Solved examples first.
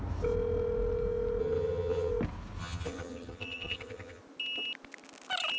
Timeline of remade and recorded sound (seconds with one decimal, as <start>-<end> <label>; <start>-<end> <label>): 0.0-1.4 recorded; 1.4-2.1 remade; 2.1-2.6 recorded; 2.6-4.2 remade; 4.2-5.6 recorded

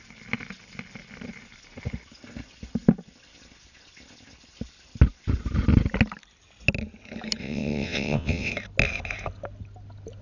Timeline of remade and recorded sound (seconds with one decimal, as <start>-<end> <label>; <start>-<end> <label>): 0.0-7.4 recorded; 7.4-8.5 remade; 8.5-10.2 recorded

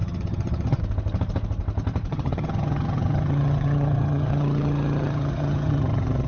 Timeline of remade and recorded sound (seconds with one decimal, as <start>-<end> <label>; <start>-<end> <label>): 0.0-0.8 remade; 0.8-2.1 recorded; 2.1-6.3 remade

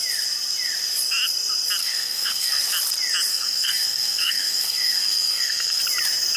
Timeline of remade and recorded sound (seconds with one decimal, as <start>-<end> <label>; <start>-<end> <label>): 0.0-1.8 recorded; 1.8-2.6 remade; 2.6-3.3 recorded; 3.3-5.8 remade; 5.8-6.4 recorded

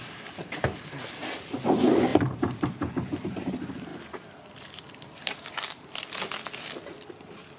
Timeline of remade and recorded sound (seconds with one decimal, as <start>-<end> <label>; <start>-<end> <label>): 0.0-2.1 recorded; 2.1-3.5 remade; 3.5-5.2 recorded; 5.2-6.0 remade; 6.0-7.6 recorded

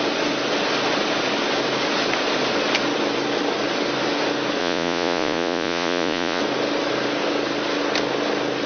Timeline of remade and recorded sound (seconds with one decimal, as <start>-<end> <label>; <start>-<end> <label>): 0.0-4.6 recorded; 4.6-6.4 remade; 6.4-8.7 recorded